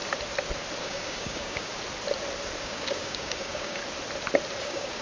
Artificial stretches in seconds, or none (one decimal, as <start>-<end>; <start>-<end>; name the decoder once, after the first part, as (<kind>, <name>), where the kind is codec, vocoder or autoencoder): 0.8-1.7 (codec, DAC); 2.6-3.8; 4.6-5.0